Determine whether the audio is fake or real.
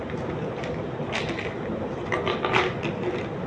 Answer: real